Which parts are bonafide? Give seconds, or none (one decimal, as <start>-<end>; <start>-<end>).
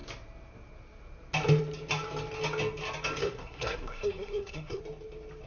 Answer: 0.0-3.2; 4.8-5.5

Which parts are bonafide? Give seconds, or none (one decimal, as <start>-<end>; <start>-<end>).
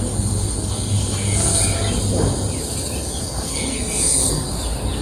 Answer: 1.6-3.2; 4.5-5.0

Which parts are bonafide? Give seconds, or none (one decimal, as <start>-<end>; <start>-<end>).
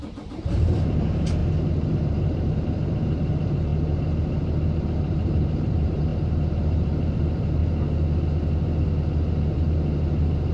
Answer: 1.4-2.1; 3.7-4.8; 7.6-10.5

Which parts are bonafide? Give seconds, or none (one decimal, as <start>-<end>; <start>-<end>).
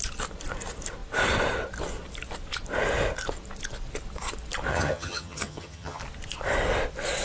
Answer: 0.0-4.7; 6.0-7.2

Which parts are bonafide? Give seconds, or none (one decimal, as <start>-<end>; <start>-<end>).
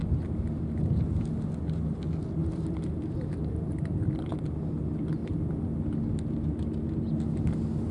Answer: 0.0-2.4; 4.3-5.2; 5.8-7.9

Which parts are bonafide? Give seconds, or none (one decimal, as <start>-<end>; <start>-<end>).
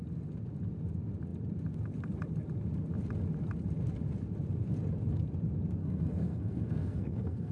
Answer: 0.0-5.8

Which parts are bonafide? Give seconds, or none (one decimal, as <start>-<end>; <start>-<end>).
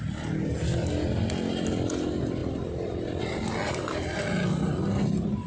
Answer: 0.0-5.5